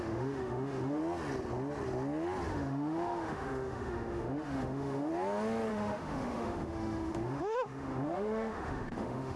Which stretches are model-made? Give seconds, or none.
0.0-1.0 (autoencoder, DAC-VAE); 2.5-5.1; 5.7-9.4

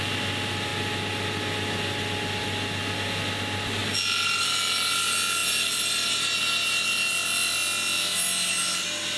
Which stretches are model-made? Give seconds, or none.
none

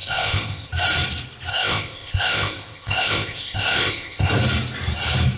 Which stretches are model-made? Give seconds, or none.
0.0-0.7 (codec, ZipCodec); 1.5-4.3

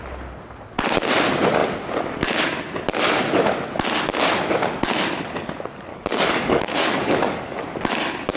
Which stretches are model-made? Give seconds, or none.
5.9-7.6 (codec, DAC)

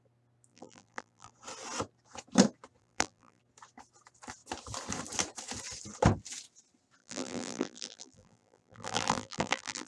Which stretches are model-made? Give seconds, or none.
0.5-1.3 (vocoder, BigVGAN v2); 2.8-3.4; 7.0-9.9

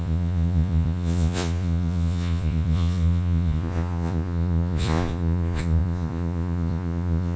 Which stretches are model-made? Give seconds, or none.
0.0-7.4 (vocoder, Vocos)

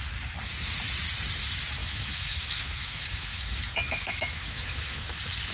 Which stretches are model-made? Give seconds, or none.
1.8-5.1 (autoencoder, DAC-VAE)